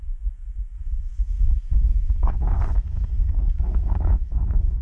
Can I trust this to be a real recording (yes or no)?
no